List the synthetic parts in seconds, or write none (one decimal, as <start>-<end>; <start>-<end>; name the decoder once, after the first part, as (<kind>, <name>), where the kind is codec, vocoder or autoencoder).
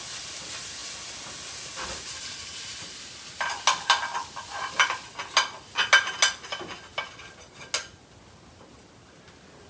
none